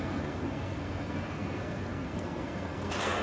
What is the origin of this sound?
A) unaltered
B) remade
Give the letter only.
B